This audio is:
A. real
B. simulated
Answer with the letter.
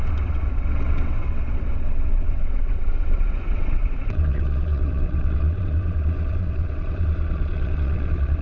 B